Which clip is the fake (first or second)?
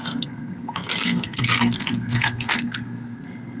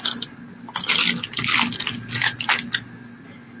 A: first